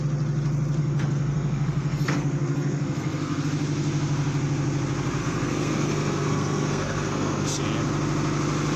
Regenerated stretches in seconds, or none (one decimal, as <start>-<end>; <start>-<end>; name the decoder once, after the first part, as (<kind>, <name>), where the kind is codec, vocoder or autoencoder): 0.8-3.4 (codec, SNAC); 5.2-7.6